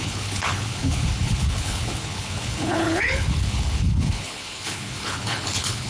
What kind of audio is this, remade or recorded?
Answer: remade